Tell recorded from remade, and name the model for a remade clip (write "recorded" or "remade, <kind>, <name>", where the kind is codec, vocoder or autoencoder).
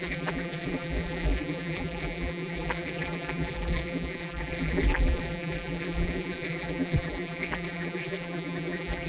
remade, vocoder, BigVGAN v2